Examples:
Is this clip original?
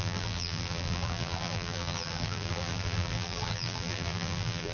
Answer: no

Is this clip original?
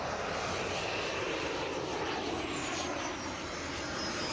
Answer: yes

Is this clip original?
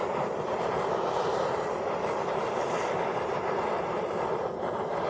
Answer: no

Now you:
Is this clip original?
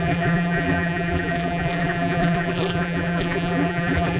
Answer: no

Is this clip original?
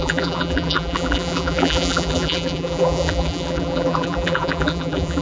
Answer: no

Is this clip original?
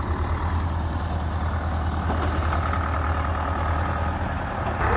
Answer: yes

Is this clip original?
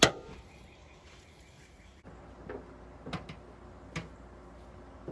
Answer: yes